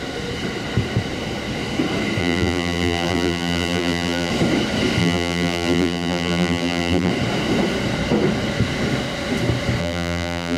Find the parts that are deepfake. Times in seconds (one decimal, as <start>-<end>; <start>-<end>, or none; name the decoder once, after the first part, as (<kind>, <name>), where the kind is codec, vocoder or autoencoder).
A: 2.2-4.3 (vocoder, BigVGAN v2); 5.0-7.1; 9.8-10.6

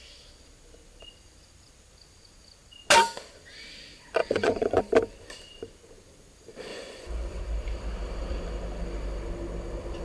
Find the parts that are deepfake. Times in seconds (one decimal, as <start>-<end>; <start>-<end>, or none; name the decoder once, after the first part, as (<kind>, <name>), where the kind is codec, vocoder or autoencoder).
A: 4.2-4.8 (vocoder, Vocos); 6.7-7.4

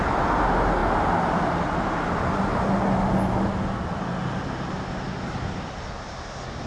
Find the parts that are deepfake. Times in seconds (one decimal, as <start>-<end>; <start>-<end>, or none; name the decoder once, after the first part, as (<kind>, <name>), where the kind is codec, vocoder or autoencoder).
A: none

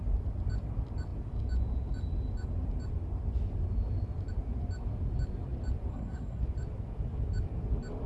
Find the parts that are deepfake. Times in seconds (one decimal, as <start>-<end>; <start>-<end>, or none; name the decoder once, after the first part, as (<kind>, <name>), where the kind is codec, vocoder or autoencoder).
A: 5.9-6.4 (codec, SNAC)

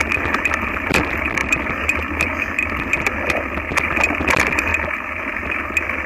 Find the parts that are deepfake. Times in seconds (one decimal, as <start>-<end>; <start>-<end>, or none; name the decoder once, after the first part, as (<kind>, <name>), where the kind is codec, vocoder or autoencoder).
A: none

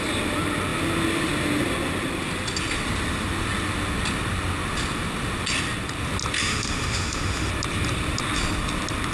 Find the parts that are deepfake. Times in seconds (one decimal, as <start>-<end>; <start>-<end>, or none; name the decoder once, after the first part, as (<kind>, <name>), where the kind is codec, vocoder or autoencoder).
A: 6.4-7.5 (autoencoder, DAC-VAE)

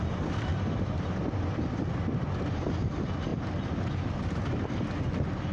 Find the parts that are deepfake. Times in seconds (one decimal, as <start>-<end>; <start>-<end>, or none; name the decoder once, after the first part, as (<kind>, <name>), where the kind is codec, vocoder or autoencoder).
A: none